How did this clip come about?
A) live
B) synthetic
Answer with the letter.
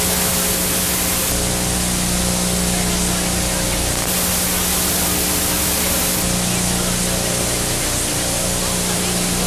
A